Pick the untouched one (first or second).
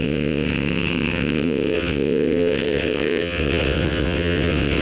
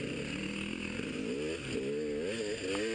second